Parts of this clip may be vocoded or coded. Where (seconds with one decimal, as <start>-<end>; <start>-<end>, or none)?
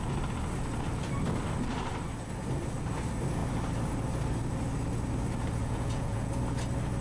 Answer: 5.6-6.3